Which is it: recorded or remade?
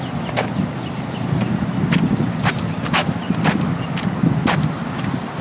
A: recorded